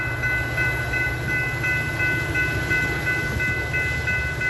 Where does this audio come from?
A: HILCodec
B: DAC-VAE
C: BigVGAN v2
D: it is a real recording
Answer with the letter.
D